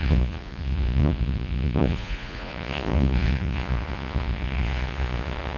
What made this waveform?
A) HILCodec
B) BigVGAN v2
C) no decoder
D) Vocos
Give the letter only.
D